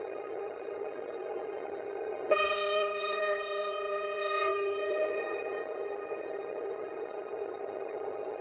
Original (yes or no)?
no